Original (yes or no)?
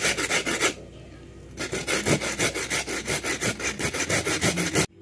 yes